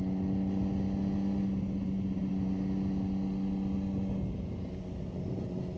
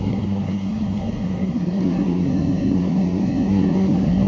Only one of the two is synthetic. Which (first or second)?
second